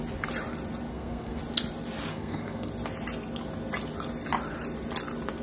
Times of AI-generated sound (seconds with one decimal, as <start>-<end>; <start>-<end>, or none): 0.9-1.4; 2.1-2.7

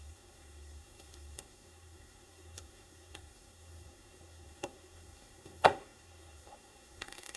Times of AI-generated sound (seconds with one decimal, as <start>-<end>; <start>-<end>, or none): 0.0-7.4